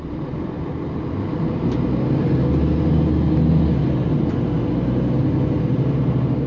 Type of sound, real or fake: real